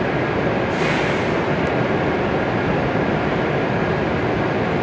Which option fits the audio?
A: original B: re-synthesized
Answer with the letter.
A